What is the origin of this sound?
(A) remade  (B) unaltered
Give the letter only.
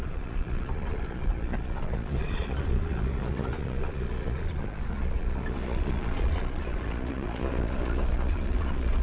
A